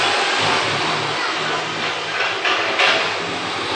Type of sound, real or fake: real